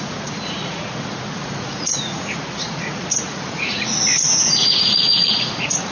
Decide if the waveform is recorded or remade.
remade